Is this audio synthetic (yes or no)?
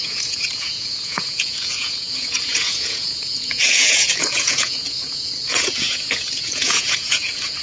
yes